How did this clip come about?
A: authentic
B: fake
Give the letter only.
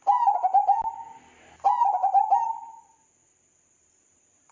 A